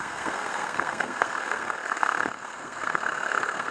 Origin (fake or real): fake